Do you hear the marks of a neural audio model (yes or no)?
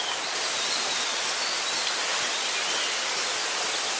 no